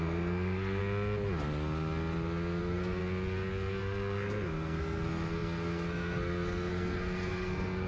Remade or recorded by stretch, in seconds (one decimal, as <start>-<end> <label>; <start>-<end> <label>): 0.0-0.8 remade; 0.8-2.6 recorded; 2.6-3.0 remade; 3.0-3.8 recorded; 3.8-7.9 remade